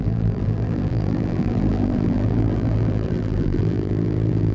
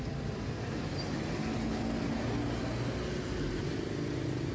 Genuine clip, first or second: second